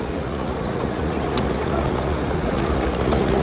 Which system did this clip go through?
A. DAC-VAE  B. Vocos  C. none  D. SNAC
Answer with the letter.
B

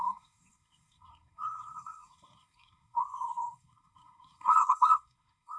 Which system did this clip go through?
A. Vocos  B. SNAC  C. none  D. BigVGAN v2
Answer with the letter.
B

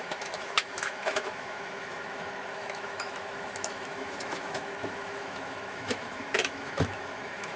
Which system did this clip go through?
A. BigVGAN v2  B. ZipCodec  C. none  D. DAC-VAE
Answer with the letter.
D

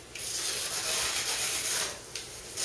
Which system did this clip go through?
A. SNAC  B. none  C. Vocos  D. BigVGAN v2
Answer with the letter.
B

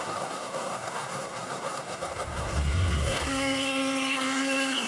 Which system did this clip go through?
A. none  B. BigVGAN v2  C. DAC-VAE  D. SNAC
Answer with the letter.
D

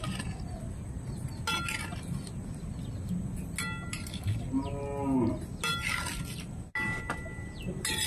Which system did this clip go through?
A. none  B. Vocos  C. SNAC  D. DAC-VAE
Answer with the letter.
A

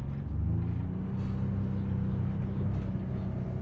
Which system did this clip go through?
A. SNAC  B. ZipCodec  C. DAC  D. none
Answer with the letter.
D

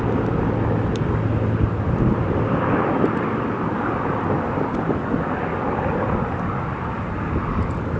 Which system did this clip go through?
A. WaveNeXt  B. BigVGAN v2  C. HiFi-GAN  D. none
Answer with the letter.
D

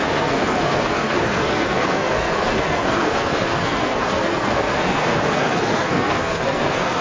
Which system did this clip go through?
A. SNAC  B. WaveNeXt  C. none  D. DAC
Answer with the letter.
A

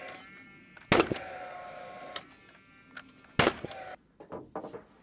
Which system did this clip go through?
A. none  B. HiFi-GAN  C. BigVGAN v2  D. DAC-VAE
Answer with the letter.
A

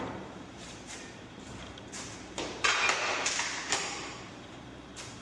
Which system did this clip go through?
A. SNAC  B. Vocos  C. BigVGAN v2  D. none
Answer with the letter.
C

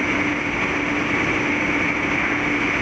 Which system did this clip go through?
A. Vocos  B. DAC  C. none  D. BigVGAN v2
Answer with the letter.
C